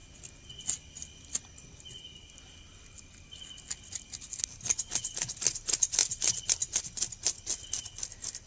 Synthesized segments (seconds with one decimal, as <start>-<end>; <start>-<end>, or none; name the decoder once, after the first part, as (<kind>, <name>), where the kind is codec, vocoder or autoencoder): none